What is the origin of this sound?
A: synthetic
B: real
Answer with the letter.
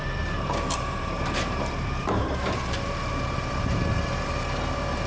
A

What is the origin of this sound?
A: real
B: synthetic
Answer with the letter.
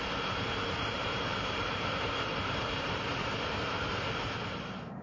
B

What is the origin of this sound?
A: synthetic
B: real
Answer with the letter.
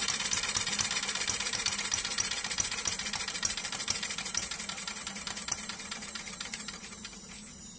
A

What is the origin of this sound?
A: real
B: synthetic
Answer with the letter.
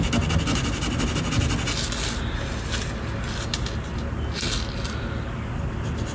A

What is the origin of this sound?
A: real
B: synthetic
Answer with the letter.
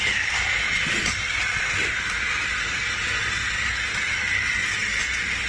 A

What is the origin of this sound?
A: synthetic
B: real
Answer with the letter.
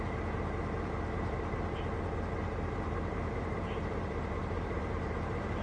A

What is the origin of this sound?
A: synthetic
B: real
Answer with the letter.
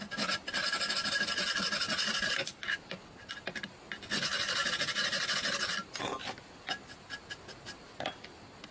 B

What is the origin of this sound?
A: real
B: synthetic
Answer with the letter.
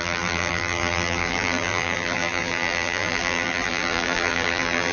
B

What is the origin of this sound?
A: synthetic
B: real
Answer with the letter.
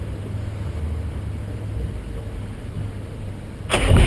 B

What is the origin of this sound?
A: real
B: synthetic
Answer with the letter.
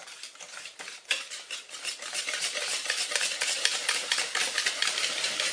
B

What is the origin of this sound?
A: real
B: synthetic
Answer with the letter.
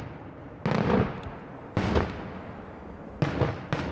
A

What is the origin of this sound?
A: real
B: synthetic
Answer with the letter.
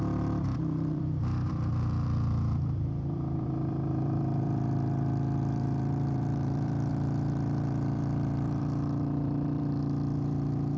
B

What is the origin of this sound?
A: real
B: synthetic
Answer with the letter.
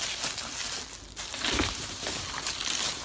A